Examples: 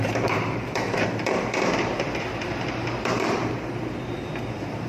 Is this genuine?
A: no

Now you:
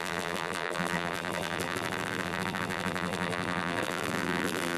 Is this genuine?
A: no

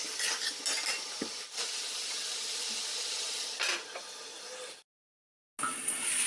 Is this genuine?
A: yes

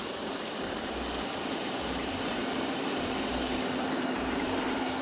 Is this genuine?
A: no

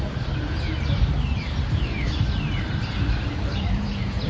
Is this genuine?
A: no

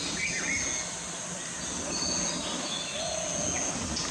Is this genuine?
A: yes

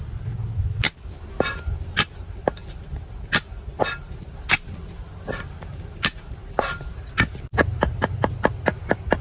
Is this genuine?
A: yes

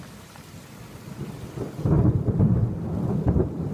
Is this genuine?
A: yes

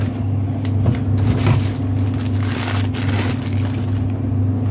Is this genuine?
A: yes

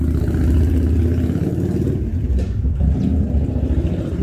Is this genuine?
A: no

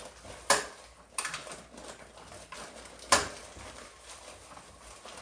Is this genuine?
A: yes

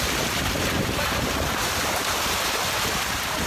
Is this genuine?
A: no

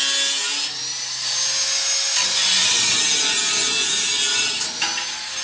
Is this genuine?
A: yes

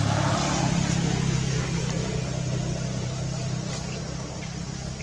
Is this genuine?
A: yes